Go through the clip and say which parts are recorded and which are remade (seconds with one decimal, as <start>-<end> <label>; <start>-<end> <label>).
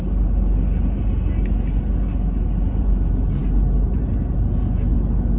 0.0-5.4 recorded